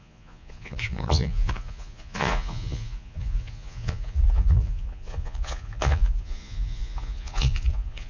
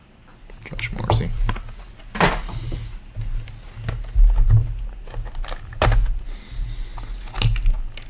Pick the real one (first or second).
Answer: second